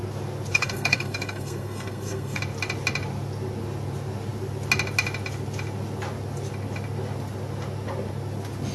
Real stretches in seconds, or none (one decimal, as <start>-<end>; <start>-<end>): 0.0-0.5; 2.4-8.7

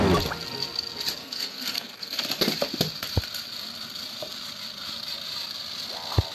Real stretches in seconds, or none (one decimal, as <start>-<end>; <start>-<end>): 0.0-1.2; 2.2-6.3

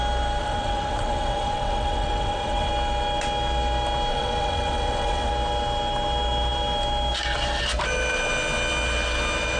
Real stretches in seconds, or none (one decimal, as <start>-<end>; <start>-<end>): 0.0-0.4; 2.7-4.1; 5.3-9.6

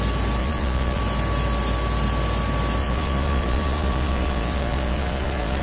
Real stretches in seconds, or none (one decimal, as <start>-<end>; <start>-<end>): 0.0-0.4; 1.0-2.8